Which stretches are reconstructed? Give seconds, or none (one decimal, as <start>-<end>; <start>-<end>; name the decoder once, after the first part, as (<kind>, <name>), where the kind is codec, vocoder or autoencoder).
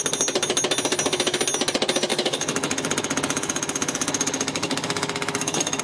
2.1-5.8 (autoencoder, DAC-VAE)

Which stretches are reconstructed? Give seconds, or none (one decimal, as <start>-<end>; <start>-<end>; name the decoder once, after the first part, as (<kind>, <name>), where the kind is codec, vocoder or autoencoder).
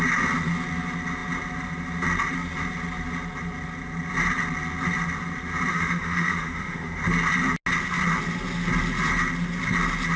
5.7-7.0 (autoencoder, DAC-VAE)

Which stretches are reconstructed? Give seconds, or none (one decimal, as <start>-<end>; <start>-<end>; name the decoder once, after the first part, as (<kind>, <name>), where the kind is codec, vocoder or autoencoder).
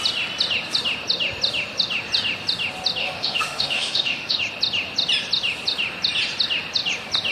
3.0-4.4 (autoencoder, DAC-VAE)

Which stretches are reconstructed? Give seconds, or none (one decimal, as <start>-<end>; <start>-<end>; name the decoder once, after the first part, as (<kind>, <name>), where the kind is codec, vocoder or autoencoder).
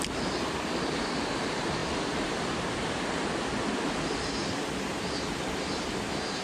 none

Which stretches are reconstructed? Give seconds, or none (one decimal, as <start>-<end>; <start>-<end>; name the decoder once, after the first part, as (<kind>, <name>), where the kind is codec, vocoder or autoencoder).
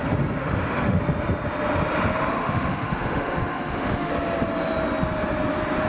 0.4-1.0 (autoencoder, DAC-VAE); 2.3-4.1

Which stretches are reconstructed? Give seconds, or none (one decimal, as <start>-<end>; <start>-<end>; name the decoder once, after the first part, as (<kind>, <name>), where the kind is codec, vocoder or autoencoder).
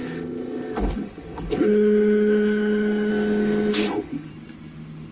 0.0-3.1 (autoencoder, DAC-VAE); 3.7-4.3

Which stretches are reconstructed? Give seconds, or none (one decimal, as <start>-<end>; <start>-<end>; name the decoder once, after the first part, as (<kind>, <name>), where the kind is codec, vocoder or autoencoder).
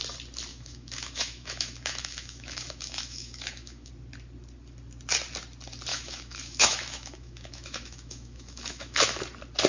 0.5-3.9 (autoencoder, DAC-VAE); 5.9-9.2